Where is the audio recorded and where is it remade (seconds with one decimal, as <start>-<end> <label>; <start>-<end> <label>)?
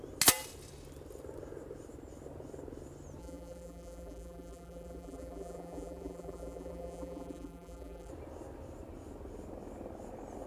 0.0-3.2 recorded; 3.2-8.1 remade; 8.1-10.5 recorded